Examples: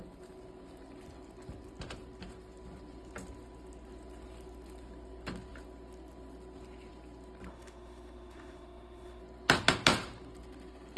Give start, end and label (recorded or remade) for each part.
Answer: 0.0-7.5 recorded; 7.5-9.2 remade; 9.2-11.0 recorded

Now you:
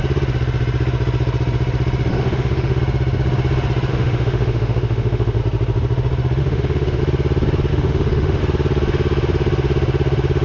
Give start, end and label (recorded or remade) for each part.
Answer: 0.0-2.1 recorded; 2.1-2.8 remade; 2.8-3.9 recorded; 3.9-5.4 remade; 5.4-6.4 recorded; 6.4-7.0 remade; 7.0-7.7 recorded; 7.7-8.4 remade; 8.4-10.4 recorded

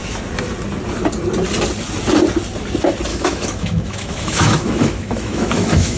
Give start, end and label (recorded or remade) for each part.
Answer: 0.0-3.1 recorded; 3.1-6.0 remade

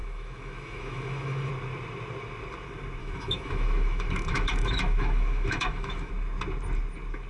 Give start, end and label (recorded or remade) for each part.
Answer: 0.0-1.5 remade; 1.5-3.0 recorded; 3.0-6.1 remade; 6.1-7.3 recorded

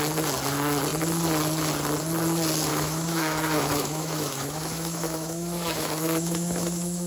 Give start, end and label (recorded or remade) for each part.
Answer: 0.0-2.7 recorded; 2.7-7.1 remade